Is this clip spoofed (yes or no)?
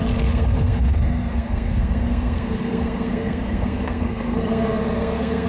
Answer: yes